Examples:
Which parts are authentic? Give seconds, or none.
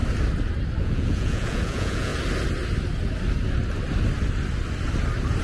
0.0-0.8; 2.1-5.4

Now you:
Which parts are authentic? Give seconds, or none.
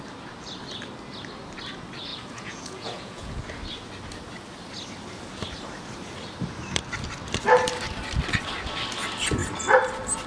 0.0-2.1; 3.4-10.3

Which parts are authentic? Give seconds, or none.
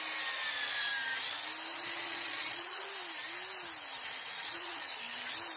0.0-1.7; 2.9-4.3; 5.0-5.6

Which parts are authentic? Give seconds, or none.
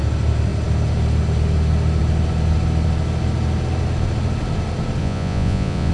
0.0-5.0